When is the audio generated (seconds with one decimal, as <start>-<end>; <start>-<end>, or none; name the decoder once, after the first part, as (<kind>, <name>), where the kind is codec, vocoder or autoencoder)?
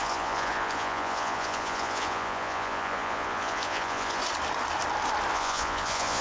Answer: 0.0-4.2 (vocoder, Vocos); 5.3-6.2